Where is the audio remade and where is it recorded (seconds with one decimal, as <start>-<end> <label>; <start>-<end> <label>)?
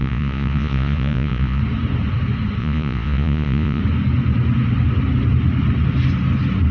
0.0-1.6 remade; 1.6-2.6 recorded; 2.6-3.8 remade; 3.8-6.7 recorded